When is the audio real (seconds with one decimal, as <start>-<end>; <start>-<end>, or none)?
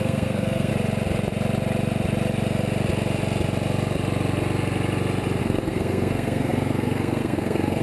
0.7-5.4